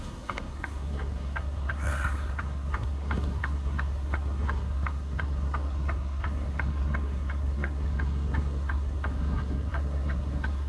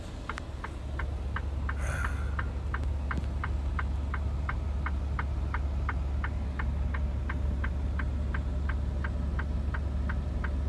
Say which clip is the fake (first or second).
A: first